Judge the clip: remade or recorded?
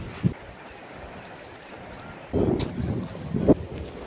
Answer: recorded